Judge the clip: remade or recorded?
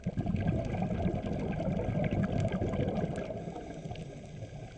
recorded